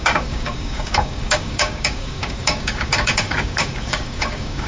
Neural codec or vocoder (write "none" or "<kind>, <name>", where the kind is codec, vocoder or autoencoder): codec, DAC